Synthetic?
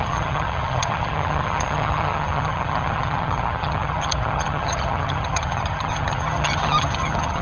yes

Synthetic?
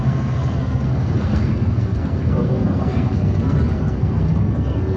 yes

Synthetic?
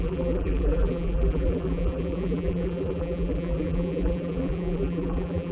yes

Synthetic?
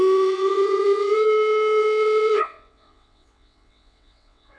yes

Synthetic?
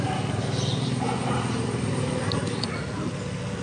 no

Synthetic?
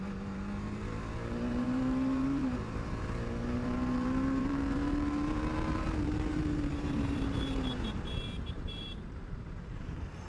yes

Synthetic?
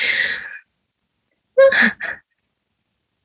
no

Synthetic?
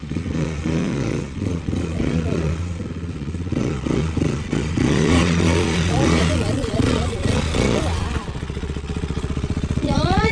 yes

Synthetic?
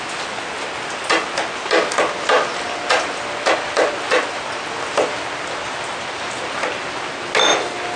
no